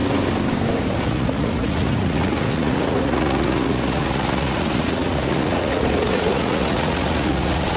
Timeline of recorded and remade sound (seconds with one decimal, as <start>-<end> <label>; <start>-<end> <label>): 0.0-1.0 recorded; 1.0-7.8 remade